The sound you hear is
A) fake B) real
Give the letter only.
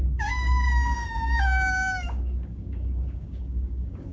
A